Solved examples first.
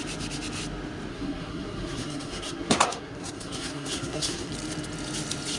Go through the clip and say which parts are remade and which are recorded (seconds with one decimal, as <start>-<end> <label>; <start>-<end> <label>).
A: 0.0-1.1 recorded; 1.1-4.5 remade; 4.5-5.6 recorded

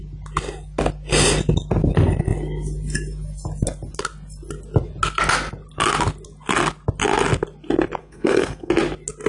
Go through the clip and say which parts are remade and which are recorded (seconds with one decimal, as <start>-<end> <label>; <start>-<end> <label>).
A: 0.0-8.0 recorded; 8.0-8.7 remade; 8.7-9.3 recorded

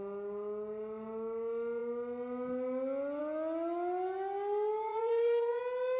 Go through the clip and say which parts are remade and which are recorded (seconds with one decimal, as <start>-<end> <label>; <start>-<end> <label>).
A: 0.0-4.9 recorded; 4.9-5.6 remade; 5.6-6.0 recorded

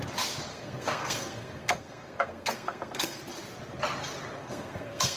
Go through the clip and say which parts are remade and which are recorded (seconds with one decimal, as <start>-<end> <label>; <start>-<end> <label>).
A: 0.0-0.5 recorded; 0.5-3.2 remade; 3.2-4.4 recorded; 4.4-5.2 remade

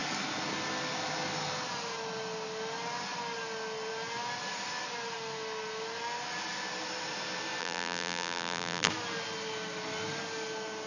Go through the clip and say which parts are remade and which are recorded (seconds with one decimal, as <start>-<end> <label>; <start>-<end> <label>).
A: 0.0-7.6 recorded; 7.6-8.9 remade; 8.9-10.9 recorded

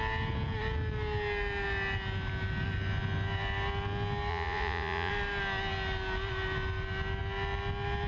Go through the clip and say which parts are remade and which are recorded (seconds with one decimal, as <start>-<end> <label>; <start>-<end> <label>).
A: 0.0-4.3 recorded; 4.3-5.1 remade; 5.1-8.1 recorded

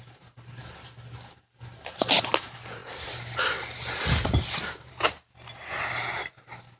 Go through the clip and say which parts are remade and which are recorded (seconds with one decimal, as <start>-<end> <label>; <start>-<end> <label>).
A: 0.0-6.8 recorded